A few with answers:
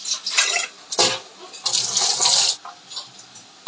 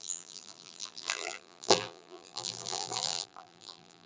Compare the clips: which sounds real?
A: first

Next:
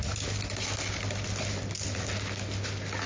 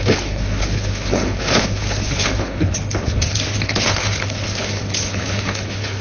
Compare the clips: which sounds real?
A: first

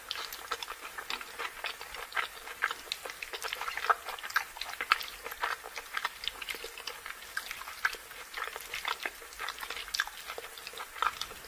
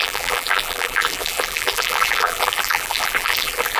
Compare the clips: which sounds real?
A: first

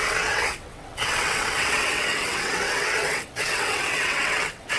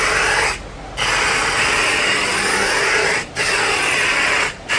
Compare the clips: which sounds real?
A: second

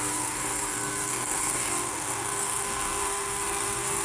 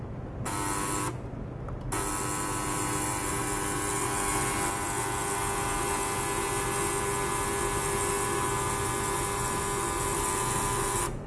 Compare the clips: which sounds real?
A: second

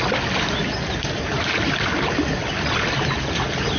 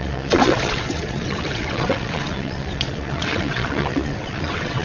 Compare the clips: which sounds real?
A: first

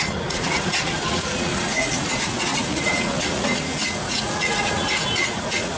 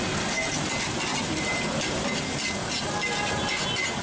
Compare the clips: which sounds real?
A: second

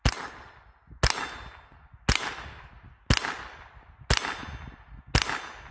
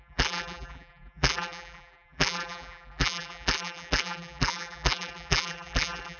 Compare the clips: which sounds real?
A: first